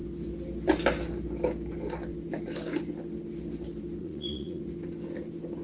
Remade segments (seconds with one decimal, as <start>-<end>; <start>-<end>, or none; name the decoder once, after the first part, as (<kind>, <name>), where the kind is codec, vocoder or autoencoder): 4.0-4.6 (vocoder, Vocos)